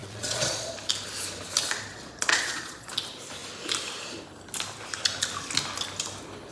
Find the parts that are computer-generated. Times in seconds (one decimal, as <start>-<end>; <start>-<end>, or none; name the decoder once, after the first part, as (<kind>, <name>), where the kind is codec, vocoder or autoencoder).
0.0-0.7 (vocoder, Vocos); 1.9-2.9